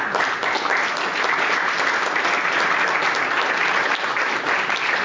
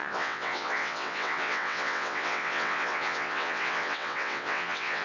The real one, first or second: first